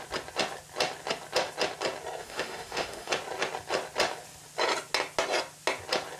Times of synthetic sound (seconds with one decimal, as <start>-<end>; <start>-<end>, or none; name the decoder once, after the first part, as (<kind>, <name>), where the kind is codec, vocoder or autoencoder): 2.2-3.1 (autoencoder, DAC-VAE)